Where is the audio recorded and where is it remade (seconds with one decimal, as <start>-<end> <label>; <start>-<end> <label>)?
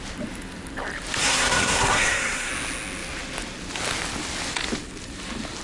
0.0-1.2 recorded; 1.2-2.5 remade; 2.5-5.6 recorded